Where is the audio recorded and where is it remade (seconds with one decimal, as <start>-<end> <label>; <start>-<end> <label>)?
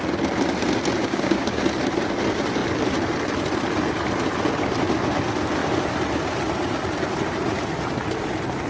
0.0-1.0 recorded; 1.0-1.6 remade; 1.6-8.7 recorded